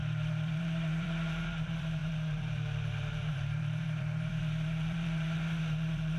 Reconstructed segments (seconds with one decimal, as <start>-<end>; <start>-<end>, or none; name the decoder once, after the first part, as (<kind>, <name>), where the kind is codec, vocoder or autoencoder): 0.0-6.2 (vocoder, BigVGAN v2)